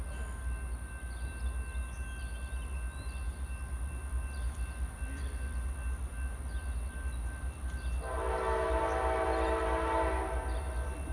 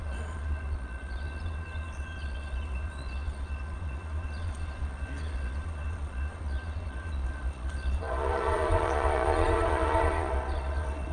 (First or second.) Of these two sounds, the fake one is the second